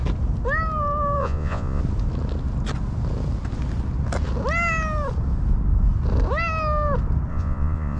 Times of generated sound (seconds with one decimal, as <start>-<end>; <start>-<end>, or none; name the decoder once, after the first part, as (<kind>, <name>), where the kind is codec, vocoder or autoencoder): 1.2-1.8 (vocoder, Vocos); 7.3-8.0